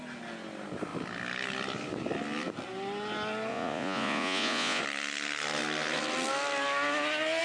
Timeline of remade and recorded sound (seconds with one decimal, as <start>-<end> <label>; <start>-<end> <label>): 0.0-3.5 recorded; 3.5-4.8 remade; 4.8-7.4 recorded

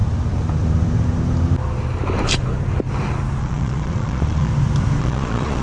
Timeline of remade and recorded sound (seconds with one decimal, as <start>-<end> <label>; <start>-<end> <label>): 0.0-3.4 recorded; 3.4-4.5 remade; 4.5-5.0 recorded; 5.0-5.6 remade

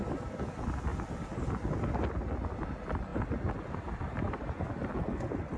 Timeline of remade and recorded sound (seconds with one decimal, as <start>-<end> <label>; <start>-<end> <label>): 0.0-5.6 recorded

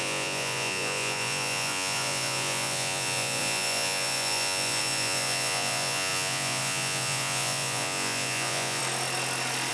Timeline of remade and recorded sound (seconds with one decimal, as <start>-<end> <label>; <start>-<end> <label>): 0.0-8.8 remade; 8.8-9.7 recorded

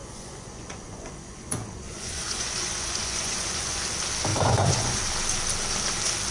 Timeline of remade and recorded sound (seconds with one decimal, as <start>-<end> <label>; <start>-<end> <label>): 0.0-3.8 remade; 3.8-4.3 recorded; 4.3-5.0 remade; 5.0-6.3 recorded

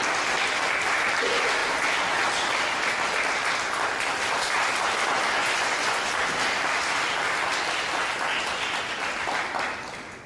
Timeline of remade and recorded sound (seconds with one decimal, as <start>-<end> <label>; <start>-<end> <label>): 0.0-5.4 recorded; 5.4-6.1 remade; 6.1-10.3 recorded